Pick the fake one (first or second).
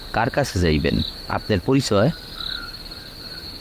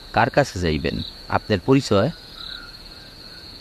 second